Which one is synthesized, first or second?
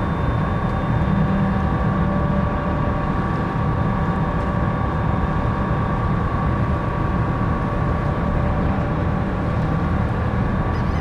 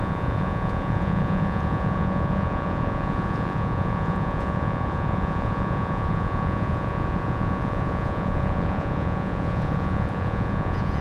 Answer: second